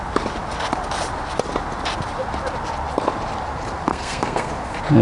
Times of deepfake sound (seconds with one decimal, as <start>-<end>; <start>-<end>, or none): 3.9-4.5